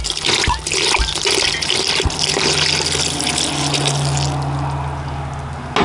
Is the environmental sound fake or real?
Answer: real